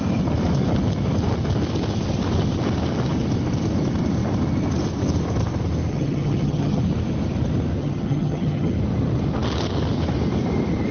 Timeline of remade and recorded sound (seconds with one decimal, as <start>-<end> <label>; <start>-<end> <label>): 0.0-5.9 recorded; 5.9-6.8 remade; 6.8-7.8 recorded; 7.8-8.7 remade; 8.7-10.9 recorded